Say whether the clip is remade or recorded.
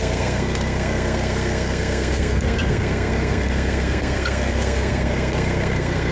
remade